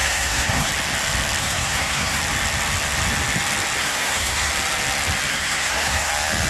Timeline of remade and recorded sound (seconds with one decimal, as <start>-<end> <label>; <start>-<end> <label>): 0.0-0.7 remade; 0.7-1.4 recorded; 1.4-2.2 remade; 2.2-3.8 recorded; 3.8-4.5 remade; 4.5-5.3 recorded; 5.3-6.1 remade; 6.1-6.5 recorded

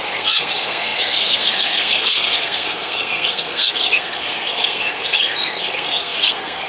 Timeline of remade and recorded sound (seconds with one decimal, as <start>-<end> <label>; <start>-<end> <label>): 0.0-6.7 remade

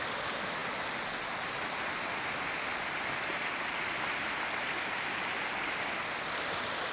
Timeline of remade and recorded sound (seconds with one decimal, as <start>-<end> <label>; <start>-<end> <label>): 0.0-6.9 recorded